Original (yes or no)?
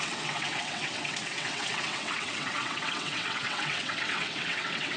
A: no